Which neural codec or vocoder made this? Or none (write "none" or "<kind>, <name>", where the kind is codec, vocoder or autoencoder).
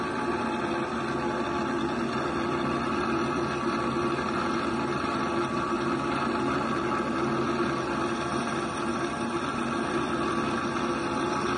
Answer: none